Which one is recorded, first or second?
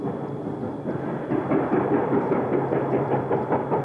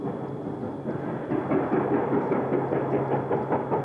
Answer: second